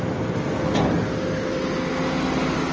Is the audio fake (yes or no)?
no